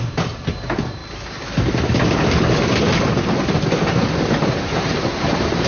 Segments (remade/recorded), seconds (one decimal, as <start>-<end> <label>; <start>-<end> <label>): 0.0-1.0 remade; 1.0-2.8 recorded; 2.8-5.7 remade